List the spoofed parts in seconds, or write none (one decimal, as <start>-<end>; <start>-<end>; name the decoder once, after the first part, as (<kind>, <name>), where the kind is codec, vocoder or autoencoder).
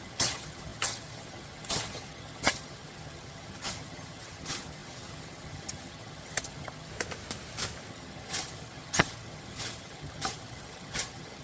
0.0-6.9 (vocoder, HiFi-GAN); 7.9-11.4